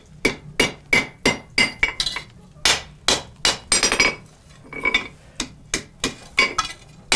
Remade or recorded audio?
recorded